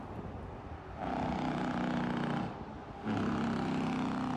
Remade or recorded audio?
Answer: recorded